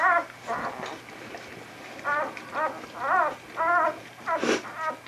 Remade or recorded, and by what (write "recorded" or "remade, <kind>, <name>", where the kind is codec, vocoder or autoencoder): recorded